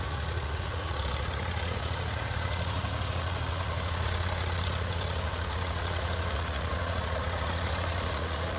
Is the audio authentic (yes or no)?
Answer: no